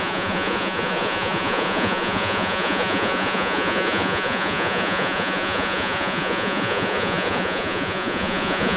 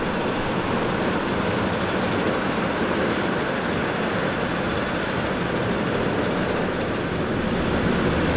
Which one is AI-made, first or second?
first